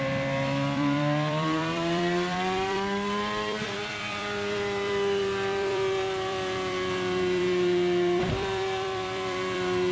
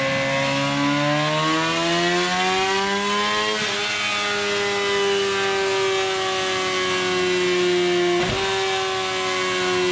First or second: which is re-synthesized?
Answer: first